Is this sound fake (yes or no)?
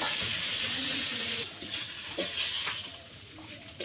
yes